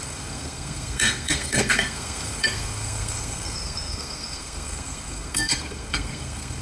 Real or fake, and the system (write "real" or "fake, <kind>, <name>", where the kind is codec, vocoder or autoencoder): fake, codec, SNAC